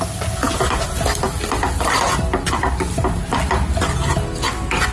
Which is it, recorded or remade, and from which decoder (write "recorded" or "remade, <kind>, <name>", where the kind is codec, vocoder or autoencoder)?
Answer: recorded